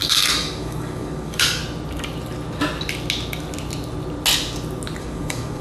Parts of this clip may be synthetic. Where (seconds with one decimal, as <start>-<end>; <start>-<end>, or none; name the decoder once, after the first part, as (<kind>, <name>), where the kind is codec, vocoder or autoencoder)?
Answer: 0.0-1.6 (codec, DAC); 5.0-5.6